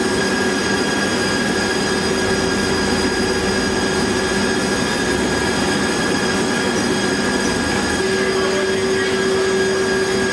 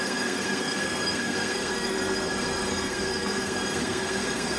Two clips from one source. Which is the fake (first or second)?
second